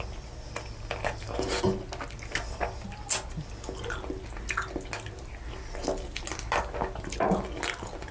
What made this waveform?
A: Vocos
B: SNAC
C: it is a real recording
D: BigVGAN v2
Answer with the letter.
C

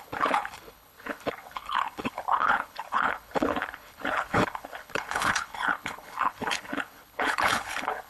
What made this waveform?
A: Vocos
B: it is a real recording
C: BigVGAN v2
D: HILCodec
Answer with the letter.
D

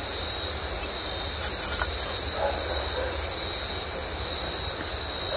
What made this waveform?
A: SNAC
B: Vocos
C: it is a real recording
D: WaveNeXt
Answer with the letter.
C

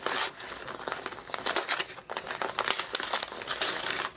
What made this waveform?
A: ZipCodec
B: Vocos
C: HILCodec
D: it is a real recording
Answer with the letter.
D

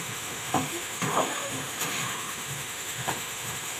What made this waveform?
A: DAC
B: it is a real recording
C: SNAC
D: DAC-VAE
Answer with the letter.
D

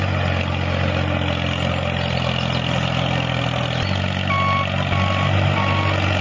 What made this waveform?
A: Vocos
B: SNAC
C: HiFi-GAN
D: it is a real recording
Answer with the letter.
D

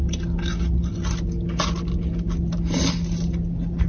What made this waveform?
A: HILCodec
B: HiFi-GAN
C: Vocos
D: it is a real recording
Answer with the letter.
D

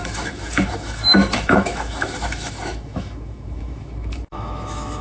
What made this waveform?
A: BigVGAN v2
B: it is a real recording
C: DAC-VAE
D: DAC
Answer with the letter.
C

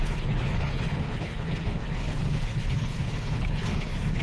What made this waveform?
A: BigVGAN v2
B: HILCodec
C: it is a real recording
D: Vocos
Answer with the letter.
B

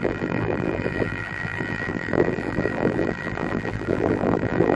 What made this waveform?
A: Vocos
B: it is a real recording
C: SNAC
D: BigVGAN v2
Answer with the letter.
D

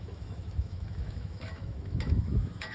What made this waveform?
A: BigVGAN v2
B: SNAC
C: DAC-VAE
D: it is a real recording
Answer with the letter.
C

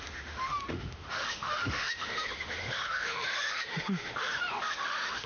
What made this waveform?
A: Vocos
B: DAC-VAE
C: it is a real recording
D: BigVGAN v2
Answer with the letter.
B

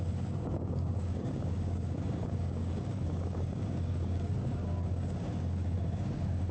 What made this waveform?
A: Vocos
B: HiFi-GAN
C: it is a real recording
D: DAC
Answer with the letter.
D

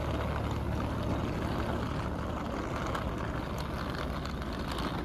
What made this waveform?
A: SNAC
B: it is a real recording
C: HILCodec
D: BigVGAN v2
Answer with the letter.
B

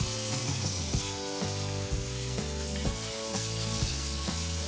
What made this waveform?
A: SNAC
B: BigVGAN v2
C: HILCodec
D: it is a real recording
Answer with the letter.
A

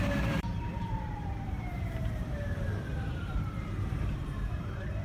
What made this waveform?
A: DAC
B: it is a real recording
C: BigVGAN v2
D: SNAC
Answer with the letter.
C